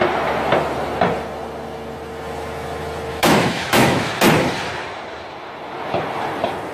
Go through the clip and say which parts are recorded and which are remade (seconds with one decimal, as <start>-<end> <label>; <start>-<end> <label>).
0.0-3.1 recorded; 3.1-4.1 remade; 4.1-6.7 recorded